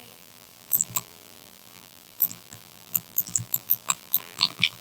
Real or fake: fake